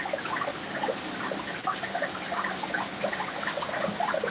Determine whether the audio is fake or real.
real